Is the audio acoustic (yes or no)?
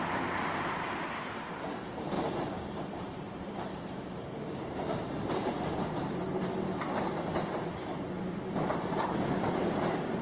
no